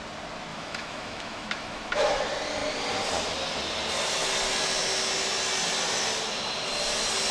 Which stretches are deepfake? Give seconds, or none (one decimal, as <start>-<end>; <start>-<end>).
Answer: 0.5-2.2